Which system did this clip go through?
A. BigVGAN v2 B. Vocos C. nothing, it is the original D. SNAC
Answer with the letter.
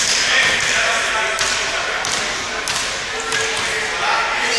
C